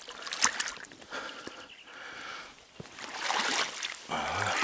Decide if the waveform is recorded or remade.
recorded